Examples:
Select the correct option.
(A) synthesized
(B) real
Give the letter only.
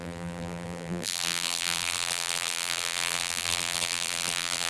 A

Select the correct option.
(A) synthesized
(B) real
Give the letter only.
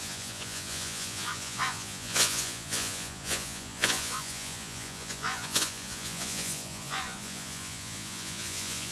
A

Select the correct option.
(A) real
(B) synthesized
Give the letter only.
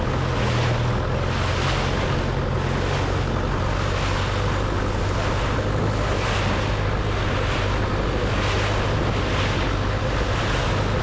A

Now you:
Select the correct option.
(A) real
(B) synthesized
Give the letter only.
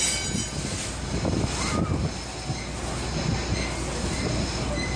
A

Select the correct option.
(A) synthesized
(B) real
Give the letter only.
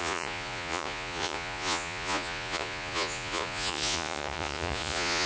A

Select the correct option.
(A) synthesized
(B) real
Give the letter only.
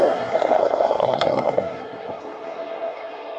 A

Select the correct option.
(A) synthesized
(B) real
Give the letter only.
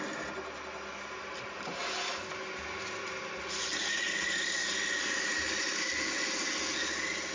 B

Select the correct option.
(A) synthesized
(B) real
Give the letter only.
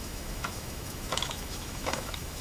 A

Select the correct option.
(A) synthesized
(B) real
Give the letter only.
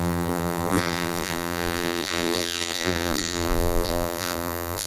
A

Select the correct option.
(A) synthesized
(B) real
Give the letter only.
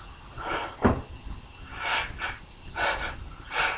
B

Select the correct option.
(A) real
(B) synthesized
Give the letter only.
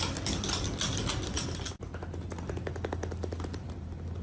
A